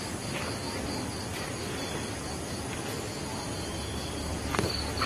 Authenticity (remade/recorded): recorded